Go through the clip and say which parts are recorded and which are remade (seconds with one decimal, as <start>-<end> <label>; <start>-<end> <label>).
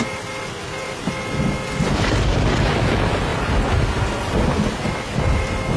0.0-5.8 recorded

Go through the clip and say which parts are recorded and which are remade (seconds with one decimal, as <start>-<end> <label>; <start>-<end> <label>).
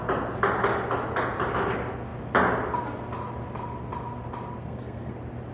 0.0-4.6 recorded; 4.6-5.1 remade; 5.1-5.5 recorded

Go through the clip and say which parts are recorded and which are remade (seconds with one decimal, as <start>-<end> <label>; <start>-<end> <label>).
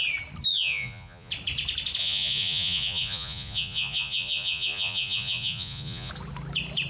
0.0-0.5 recorded; 0.5-1.3 remade; 1.3-2.0 recorded; 2.0-6.1 remade; 6.1-6.9 recorded